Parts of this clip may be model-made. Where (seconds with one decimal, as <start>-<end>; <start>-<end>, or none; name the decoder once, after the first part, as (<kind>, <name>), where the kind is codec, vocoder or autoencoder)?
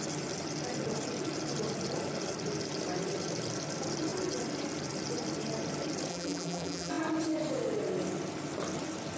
6.1-6.9 (vocoder, BigVGAN v2)